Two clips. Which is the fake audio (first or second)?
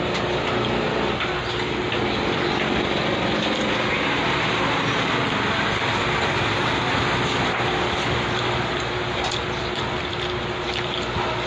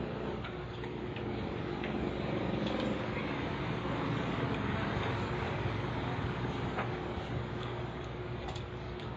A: second